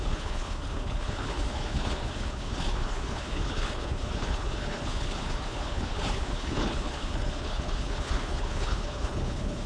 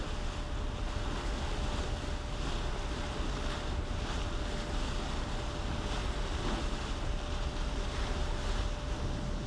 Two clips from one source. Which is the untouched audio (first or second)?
second